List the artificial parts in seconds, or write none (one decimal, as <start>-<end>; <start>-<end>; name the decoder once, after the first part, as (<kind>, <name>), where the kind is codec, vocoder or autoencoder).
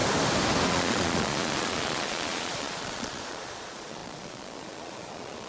0.7-5.5 (vocoder, Vocos)